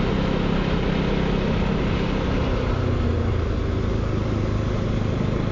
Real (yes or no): yes